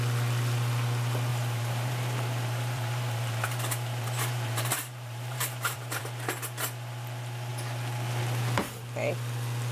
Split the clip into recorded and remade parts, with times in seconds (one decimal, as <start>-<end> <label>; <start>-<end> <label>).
0.0-1.3 recorded; 1.3-6.0 remade; 6.0-9.7 recorded